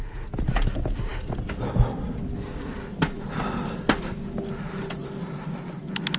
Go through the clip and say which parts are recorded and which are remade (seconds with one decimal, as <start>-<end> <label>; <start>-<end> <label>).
0.0-6.2 recorded